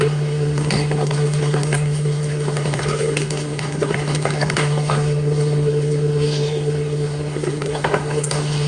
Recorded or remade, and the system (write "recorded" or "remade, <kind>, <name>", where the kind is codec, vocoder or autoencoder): remade, codec, SNAC